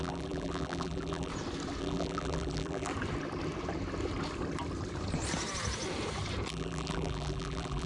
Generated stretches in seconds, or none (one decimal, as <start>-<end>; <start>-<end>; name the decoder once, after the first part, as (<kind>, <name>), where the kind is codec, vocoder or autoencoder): 0.0-1.3 (vocoder, BigVGAN v2); 1.8-2.9; 6.5-7.9